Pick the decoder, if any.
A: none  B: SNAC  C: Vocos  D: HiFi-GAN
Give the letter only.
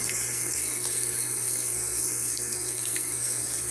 B